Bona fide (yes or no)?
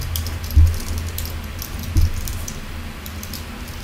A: yes